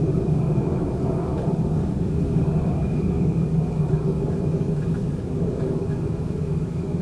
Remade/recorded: remade